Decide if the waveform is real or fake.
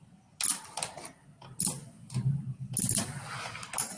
real